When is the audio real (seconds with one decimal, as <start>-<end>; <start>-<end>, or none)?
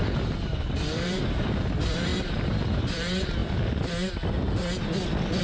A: 2.1-2.7; 3.4-5.4